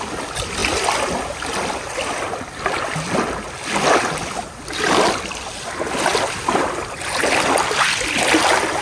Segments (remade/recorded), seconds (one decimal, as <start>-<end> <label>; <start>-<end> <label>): 0.0-8.8 recorded

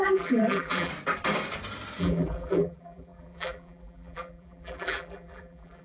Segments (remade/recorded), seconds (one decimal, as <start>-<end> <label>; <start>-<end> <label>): 0.0-0.9 remade; 0.9-2.0 recorded; 2.0-5.8 remade

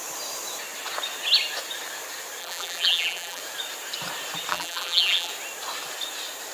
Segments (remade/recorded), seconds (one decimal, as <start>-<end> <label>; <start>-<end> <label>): 0.0-2.4 recorded; 2.4-3.4 remade; 3.4-4.5 recorded; 4.5-5.3 remade; 5.3-6.5 recorded

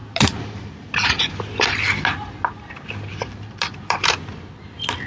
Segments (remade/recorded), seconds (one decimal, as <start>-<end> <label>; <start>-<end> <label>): 0.0-1.4 remade; 1.4-3.1 recorded; 3.1-4.1 remade; 4.1-5.1 recorded

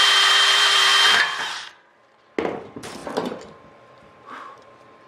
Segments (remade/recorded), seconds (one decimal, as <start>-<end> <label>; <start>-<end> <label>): 0.0-0.9 remade; 0.9-2.6 recorded; 2.6-3.0 remade; 3.0-3.8 recorded; 3.8-5.1 remade